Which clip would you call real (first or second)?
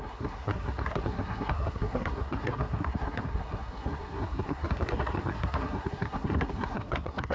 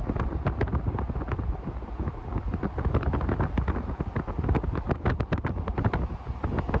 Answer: second